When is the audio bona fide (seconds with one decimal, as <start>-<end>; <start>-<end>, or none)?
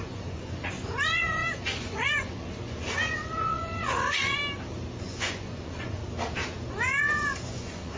4.4-5.0; 6.0-6.7